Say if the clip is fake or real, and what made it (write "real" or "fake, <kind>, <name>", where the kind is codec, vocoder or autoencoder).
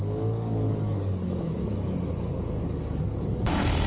fake, codec, DAC